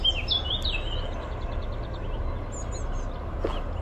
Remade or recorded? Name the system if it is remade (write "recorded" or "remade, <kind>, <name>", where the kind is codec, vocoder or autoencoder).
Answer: recorded